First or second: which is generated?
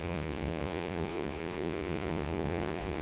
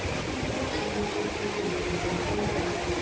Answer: first